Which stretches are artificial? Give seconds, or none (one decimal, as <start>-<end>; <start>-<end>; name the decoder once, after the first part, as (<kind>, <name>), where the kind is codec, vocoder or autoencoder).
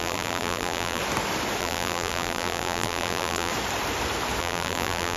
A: 0.0-1.0 (vocoder, BigVGAN v2); 1.6-3.5; 4.4-5.2